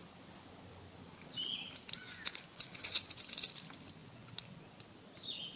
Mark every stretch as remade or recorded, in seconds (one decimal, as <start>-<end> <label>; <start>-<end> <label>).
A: 0.0-2.0 recorded; 2.0-3.4 remade; 3.4-4.0 recorded; 4.0-4.7 remade; 4.7-5.6 recorded